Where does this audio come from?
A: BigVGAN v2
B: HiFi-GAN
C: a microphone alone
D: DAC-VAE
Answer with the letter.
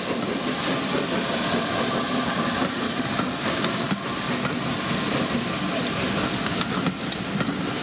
C